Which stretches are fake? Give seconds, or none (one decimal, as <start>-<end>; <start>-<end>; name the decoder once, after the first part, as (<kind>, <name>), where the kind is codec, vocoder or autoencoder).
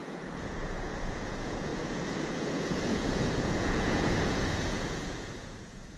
0.0-6.0 (vocoder, Vocos)